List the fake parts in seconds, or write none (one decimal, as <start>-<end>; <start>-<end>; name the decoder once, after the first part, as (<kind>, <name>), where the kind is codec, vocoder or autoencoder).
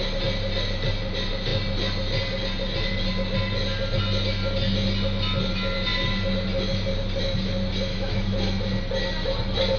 7.9-8.5 (autoencoder, DAC-VAE)